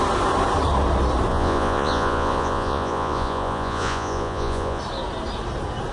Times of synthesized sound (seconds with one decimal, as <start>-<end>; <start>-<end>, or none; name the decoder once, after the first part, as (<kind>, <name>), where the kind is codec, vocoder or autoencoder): 1.3-4.8 (vocoder, Vocos)